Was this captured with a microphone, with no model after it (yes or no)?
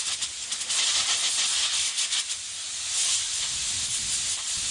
yes